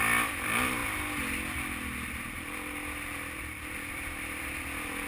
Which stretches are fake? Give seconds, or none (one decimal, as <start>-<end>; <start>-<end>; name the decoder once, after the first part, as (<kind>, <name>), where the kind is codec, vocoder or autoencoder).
0.0-0.8 (vocoder, BigVGAN v2); 3.9-5.1